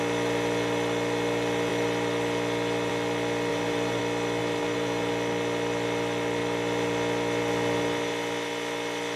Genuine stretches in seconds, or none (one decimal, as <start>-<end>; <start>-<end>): 0.0-3.5; 4.0-4.4; 5.1-9.2

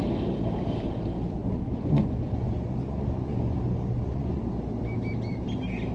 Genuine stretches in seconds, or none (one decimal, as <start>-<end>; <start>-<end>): 0.0-1.4; 4.4-5.9

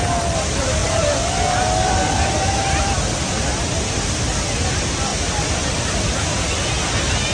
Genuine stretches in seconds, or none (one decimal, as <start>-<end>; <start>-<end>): 0.0-7.3

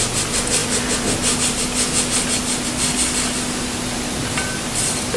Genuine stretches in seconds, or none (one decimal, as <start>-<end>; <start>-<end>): 0.0-5.2

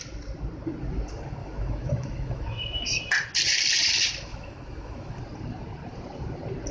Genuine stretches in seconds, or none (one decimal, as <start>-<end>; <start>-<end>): 0.0-1.4; 3.0-4.3; 5.2-6.7

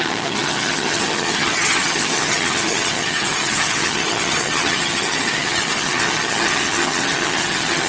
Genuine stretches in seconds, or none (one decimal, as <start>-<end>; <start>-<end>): none

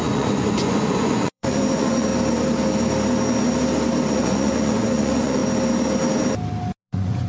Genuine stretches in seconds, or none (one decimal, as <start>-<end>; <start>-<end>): 2.1-4.1; 5.4-6.8

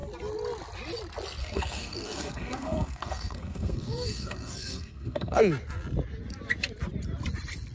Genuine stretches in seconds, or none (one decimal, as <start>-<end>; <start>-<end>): 0.0-1.4; 5.4-7.7